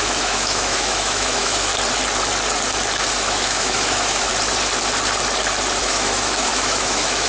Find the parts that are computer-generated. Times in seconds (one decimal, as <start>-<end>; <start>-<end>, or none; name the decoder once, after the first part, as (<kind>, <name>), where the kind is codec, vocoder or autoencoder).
0.0-1.7 (autoencoder, DAC-VAE); 3.2-4.3; 5.8-7.3